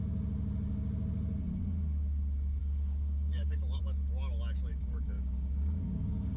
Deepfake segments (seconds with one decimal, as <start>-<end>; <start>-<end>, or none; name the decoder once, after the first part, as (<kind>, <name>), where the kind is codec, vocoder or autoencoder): 2.6-3.8 (codec, DAC); 4.7-6.4